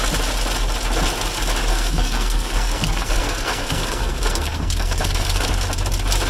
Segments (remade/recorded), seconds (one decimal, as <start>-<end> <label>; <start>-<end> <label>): 0.0-1.7 recorded; 1.7-5.5 remade; 5.5-6.3 recorded